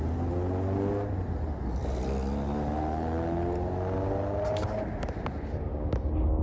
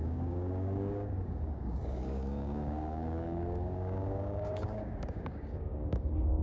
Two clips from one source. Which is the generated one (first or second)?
second